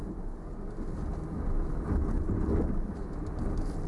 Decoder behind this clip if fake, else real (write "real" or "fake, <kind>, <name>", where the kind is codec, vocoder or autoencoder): real